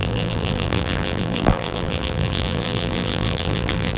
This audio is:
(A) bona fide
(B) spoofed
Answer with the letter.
B